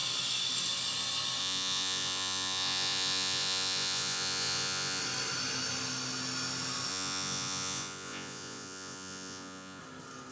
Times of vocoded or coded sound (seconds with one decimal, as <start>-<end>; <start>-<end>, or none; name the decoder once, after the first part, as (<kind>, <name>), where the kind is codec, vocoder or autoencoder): 1.4-5.0 (vocoder, Vocos); 6.9-9.8